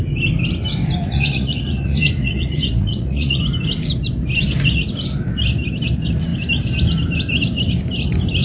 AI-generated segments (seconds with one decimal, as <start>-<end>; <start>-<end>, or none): 1.0-3.4